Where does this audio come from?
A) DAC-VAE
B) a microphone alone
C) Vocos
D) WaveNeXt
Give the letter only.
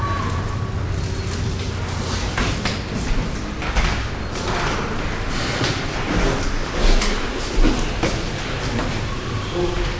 B